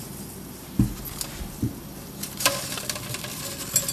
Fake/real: real